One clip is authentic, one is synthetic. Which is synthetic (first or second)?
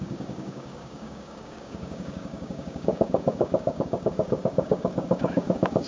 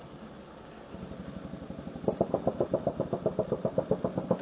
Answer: first